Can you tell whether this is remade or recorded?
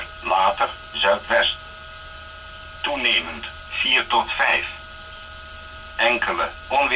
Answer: recorded